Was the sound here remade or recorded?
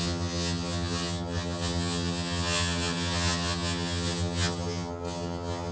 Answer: remade